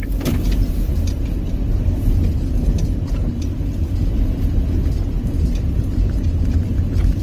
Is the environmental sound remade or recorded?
recorded